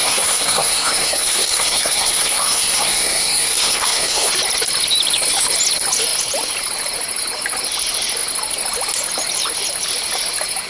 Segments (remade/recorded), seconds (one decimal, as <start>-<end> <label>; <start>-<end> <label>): 0.0-4.3 remade; 4.3-10.7 recorded